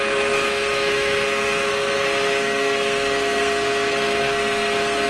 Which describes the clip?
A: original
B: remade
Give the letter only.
B